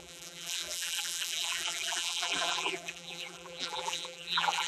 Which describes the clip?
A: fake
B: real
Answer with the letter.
A